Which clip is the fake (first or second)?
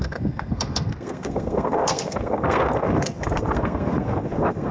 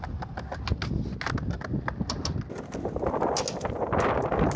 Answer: first